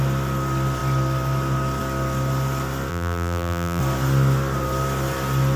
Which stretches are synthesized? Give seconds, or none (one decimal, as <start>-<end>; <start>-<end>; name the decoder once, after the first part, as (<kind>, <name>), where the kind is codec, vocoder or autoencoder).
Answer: 2.9-3.8 (vocoder, BigVGAN v2)